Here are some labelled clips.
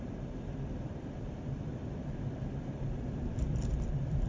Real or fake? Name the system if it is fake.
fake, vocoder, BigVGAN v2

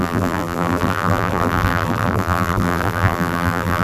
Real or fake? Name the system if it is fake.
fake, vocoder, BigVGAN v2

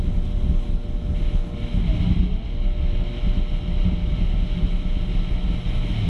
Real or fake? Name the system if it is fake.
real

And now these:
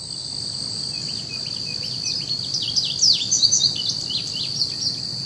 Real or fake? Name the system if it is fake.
real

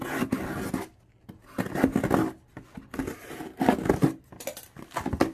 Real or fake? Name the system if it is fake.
real